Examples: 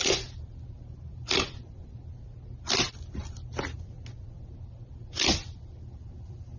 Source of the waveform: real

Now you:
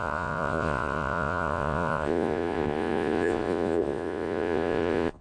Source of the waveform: fake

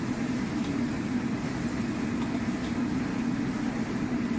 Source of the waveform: real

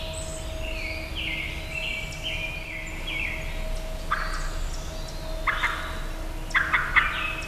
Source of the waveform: real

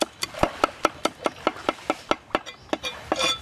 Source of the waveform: real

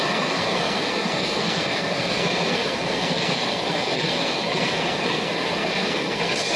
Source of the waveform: fake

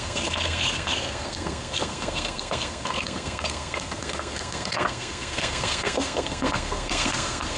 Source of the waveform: fake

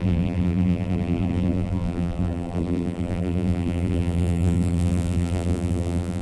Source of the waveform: fake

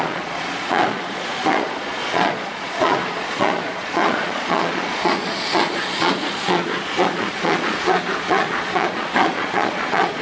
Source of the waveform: fake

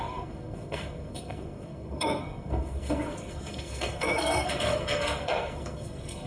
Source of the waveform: fake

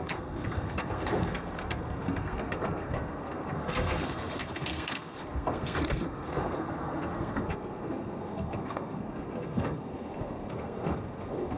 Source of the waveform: fake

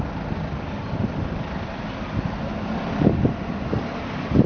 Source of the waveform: real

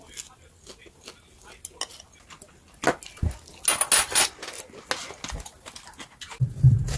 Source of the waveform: real